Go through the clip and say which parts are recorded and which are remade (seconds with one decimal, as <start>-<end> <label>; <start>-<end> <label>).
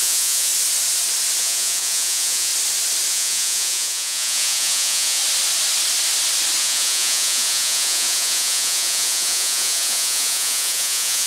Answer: 0.0-0.5 remade; 0.5-1.4 recorded; 1.4-2.5 remade; 2.5-3.1 recorded; 3.1-5.2 remade; 5.2-6.6 recorded; 6.6-11.3 remade